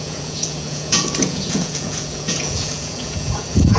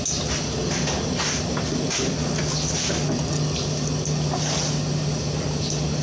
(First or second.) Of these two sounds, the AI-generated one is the first